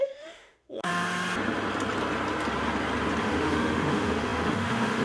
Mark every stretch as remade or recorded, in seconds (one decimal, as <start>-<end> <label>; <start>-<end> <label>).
0.0-0.9 remade; 0.9-3.2 recorded; 3.2-5.0 remade